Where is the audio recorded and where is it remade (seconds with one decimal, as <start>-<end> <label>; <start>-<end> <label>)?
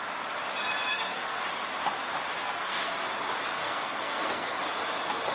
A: 0.0-0.9 recorded; 0.9-1.4 remade; 1.4-2.4 recorded; 2.4-2.9 remade; 2.9-3.5 recorded; 3.5-4.6 remade; 4.6-5.3 recorded